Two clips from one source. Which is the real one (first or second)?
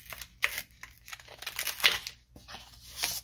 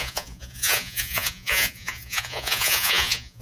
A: first